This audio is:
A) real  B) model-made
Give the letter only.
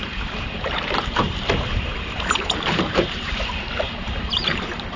B